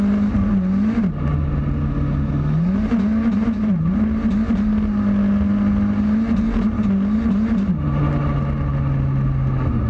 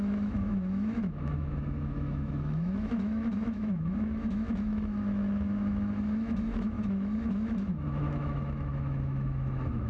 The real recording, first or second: first